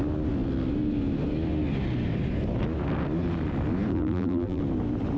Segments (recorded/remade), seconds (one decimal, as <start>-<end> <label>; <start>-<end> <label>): 0.0-3.9 recorded; 3.9-4.6 remade; 4.6-5.2 recorded